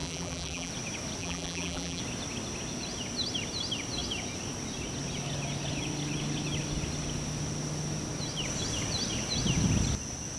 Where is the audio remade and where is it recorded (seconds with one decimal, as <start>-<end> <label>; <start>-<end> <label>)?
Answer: 0.0-0.7 remade; 0.7-1.2 recorded; 1.2-2.0 remade; 2.0-10.4 recorded